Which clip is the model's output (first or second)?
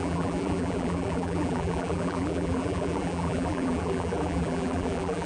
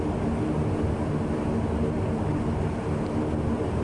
first